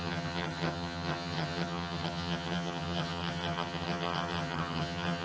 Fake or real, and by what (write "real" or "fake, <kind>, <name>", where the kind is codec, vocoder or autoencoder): fake, vocoder, HiFi-GAN